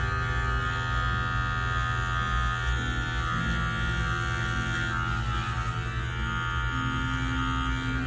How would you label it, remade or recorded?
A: recorded